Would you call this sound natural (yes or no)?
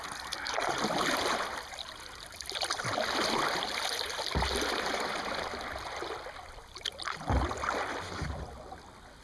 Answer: yes